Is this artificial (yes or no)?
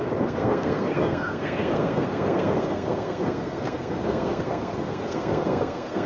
yes